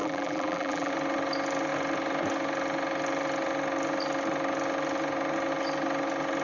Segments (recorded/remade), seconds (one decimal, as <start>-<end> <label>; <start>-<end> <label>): 0.0-0.9 remade; 0.9-6.4 recorded